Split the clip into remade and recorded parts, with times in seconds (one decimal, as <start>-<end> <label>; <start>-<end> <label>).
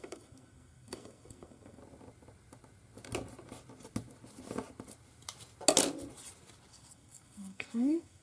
0.0-1.8 remade; 1.8-6.7 recorded; 6.7-8.2 remade